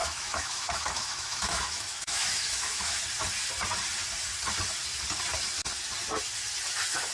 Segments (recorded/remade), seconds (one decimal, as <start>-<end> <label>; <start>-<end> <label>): 0.0-3.0 remade; 3.0-7.1 recorded